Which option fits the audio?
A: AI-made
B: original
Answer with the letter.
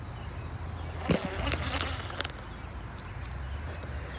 B